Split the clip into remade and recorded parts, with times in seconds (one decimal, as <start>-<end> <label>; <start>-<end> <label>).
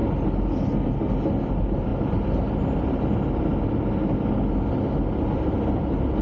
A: 0.0-6.2 recorded